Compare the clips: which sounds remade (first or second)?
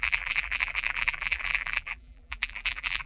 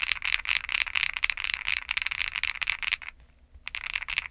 first